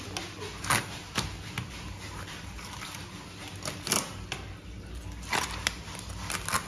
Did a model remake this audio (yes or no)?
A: no